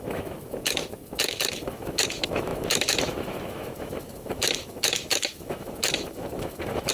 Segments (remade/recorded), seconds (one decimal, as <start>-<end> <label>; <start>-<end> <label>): 0.0-6.9 remade